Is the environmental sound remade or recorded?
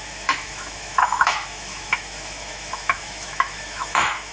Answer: remade